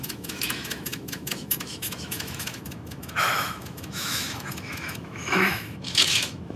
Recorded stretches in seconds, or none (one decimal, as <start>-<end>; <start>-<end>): none